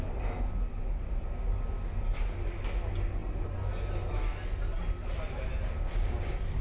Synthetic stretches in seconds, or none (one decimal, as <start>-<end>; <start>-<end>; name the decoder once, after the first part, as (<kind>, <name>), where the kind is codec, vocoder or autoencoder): none